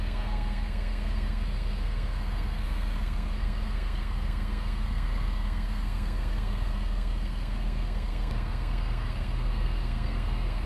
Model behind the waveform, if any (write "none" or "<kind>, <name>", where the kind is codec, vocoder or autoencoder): codec, SNAC